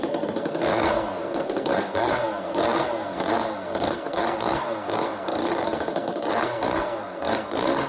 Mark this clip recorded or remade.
remade